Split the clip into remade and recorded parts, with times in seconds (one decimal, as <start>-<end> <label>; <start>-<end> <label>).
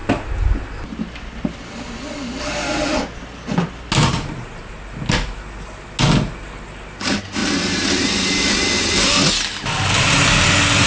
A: 0.0-10.9 recorded